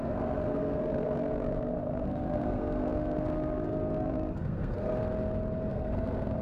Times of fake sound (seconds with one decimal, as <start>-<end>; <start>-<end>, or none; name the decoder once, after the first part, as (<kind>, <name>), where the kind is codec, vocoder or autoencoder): 0.0-4.9 (codec, SNAC); 5.7-6.4